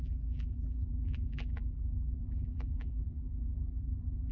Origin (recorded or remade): remade